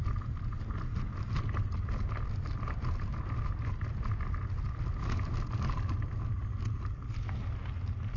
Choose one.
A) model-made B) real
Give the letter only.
B